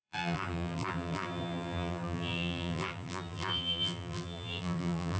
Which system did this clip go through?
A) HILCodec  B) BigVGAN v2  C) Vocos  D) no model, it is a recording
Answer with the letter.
B